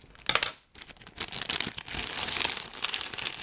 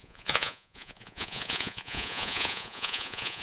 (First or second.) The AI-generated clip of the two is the second